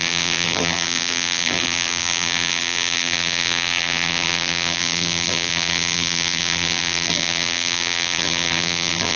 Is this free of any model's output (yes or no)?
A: no